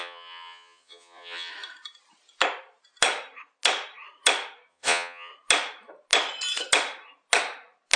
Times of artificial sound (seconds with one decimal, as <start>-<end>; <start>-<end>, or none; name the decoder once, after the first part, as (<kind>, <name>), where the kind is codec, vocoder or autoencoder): 0.0-1.5 (vocoder, Vocos); 4.7-5.3